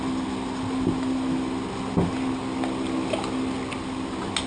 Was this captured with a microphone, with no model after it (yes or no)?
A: yes